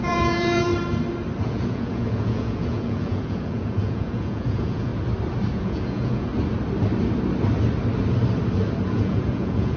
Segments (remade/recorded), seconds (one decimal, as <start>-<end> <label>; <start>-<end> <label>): 0.0-0.7 remade; 0.7-1.4 recorded; 1.4-4.9 remade; 4.9-5.5 recorded; 5.5-6.3 remade; 6.3-8.9 recorded; 8.9-9.8 remade